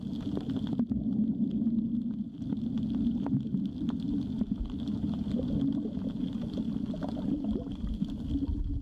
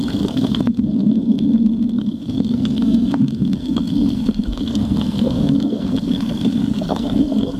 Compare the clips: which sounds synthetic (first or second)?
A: second